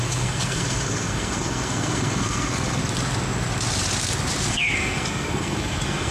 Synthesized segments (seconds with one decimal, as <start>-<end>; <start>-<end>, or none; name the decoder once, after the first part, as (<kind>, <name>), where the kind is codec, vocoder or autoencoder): 0.0-2.8 (codec, SNAC); 4.5-6.1